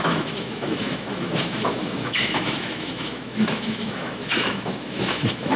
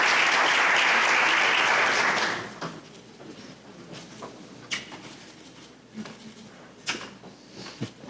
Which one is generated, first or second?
first